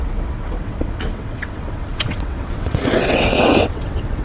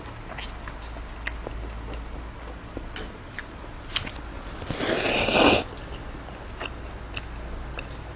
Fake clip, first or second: first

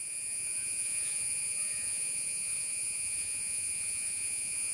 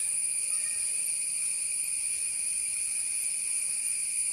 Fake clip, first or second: first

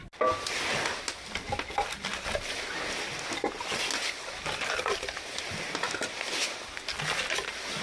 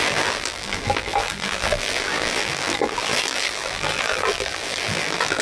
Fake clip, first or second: second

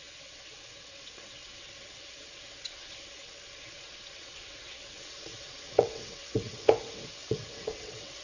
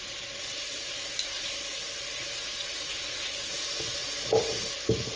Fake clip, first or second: first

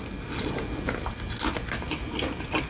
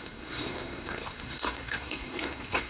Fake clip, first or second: second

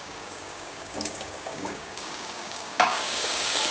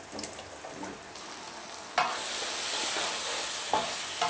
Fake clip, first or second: first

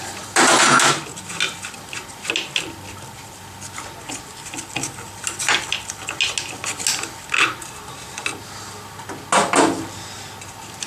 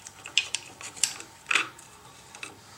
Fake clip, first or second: second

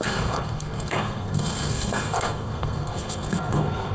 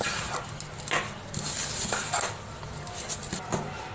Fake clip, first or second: first